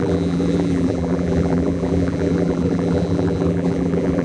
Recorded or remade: remade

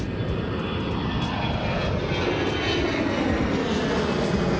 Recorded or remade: recorded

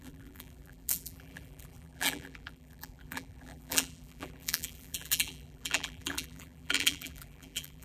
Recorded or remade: remade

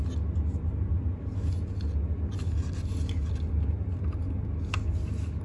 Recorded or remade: recorded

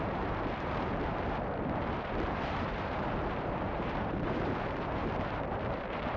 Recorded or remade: remade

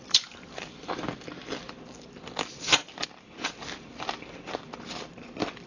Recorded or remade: remade